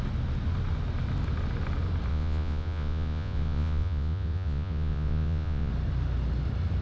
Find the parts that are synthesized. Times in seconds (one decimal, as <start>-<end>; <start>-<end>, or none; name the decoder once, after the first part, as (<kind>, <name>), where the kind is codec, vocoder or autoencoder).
2.1-5.7 (vocoder, Vocos)